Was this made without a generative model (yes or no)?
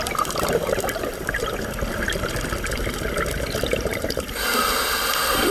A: yes